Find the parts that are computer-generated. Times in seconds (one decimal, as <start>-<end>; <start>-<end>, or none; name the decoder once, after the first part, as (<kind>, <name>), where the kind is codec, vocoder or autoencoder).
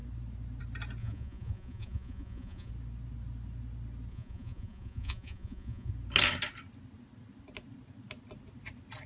1.0-2.7 (vocoder, Vocos); 4.1-5.9